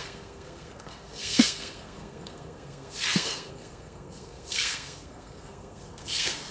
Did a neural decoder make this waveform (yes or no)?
yes